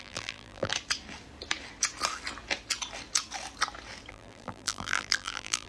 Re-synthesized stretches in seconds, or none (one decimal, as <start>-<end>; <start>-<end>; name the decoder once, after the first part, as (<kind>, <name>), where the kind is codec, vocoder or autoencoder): 0.0-0.7 (vocoder, BigVGAN v2); 4.1-5.7